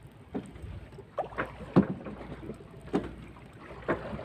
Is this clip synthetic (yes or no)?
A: no